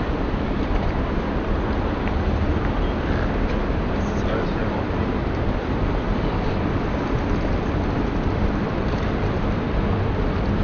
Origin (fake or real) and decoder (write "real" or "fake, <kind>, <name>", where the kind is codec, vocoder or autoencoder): fake, vocoder, BigVGAN v2